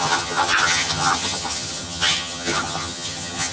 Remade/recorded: remade